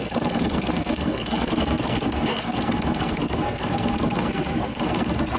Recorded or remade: remade